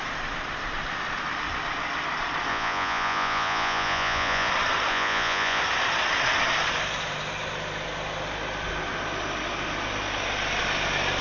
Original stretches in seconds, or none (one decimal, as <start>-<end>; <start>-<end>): 0.0-2.5; 4.5-4.9; 5.6-11.2